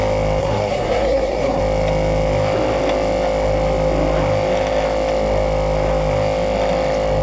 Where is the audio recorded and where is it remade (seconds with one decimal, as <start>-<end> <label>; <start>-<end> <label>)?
0.0-0.4 recorded; 0.4-1.6 remade; 1.6-7.2 recorded